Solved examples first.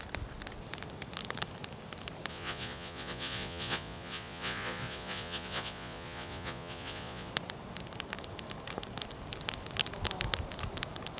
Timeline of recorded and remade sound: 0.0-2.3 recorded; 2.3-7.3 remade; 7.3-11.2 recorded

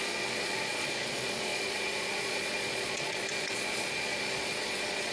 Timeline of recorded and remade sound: 0.0-5.1 remade